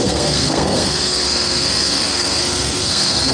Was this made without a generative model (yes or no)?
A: no